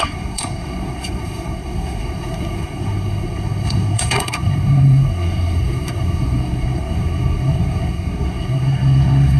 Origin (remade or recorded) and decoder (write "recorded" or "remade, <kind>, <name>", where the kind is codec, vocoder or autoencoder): remade, codec, SNAC